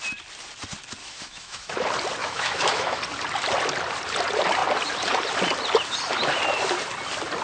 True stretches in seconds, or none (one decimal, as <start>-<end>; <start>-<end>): 0.0-1.0; 1.7-2.2; 3.0-7.4